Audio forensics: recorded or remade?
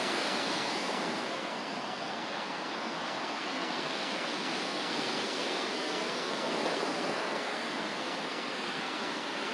remade